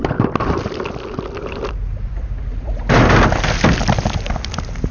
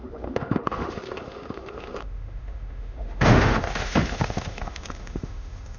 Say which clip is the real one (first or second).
first